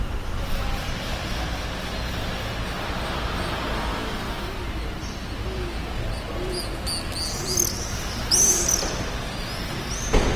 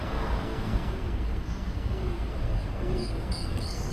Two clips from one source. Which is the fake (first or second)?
second